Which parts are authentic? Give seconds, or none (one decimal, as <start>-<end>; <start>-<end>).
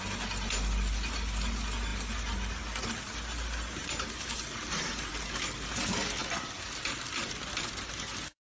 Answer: 0.0-3.8; 5.1-8.6